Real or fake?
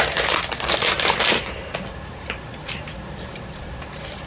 fake